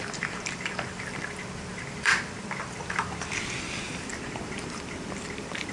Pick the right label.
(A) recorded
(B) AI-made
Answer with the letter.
B